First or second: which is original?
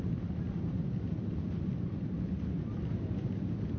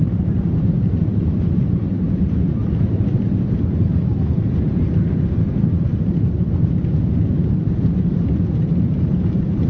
first